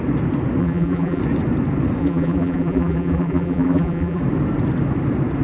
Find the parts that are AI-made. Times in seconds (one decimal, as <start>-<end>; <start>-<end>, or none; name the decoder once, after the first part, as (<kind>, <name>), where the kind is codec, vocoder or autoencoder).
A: 0.6-1.2 (vocoder, BigVGAN v2); 2.0-4.2